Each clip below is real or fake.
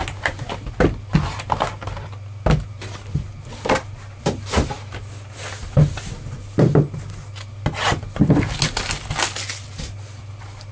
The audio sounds real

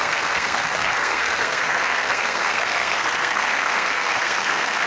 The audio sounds fake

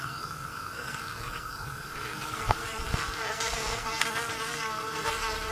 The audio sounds fake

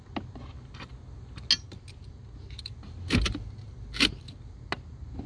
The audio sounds real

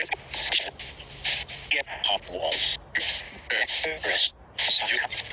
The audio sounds real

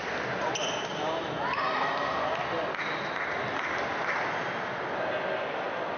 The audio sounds real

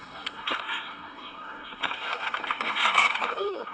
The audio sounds fake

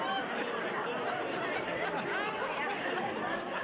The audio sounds real